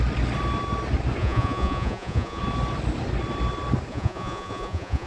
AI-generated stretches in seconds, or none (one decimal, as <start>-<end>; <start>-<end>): 1.2-2.4; 3.9-5.1